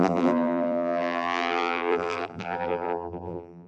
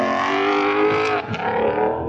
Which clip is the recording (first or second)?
second